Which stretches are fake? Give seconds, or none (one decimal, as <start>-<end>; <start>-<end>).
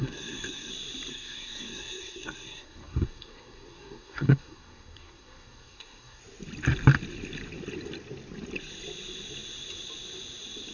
0.0-0.7; 1.1-6.2